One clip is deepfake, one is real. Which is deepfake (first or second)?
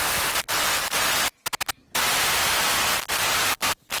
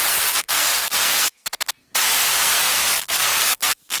second